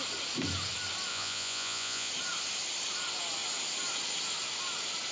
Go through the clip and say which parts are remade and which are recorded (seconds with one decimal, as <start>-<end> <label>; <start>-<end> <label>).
0.0-1.1 recorded; 1.1-2.1 remade; 2.1-5.1 recorded